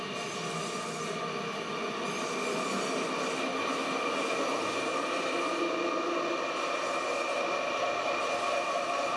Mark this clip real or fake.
real